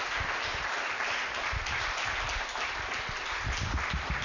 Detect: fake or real real